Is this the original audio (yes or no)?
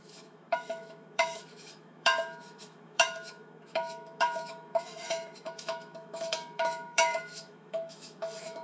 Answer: no